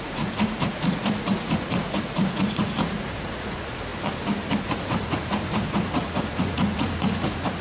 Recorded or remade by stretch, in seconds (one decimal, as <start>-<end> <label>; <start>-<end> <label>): 0.0-3.9 remade; 3.9-4.6 recorded; 4.6-7.6 remade